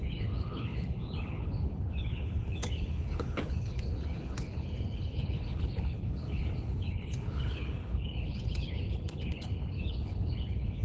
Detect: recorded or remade remade